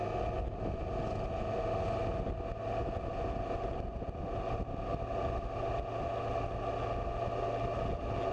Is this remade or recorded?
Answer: recorded